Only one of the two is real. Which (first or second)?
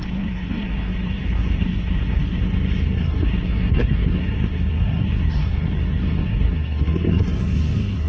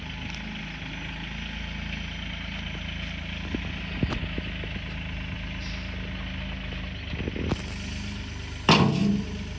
second